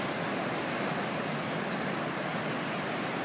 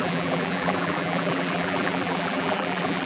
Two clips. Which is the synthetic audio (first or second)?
second